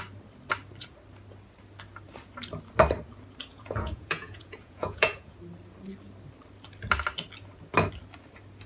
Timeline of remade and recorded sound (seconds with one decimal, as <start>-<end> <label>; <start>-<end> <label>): 0.0-3.5 recorded; 3.5-5.3 remade; 5.3-8.7 recorded

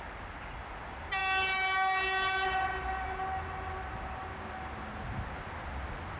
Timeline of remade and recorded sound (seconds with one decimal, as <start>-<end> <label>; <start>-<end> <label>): 0.0-6.2 recorded

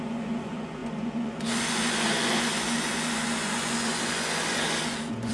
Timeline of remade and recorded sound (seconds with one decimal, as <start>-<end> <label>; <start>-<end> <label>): 0.0-5.3 remade

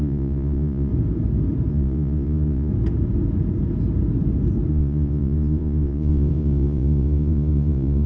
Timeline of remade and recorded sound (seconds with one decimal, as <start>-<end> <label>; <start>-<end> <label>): 0.0-0.9 remade; 0.9-1.7 recorded; 1.7-2.7 remade; 2.7-4.7 recorded; 4.7-8.1 remade

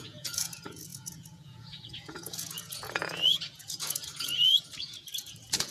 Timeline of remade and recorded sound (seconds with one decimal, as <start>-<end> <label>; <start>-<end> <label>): 0.0-5.7 remade